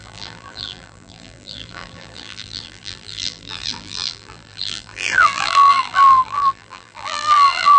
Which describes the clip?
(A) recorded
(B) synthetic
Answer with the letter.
B